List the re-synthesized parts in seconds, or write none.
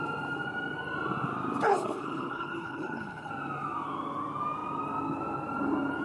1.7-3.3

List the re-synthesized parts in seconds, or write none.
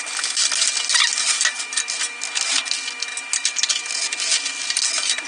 none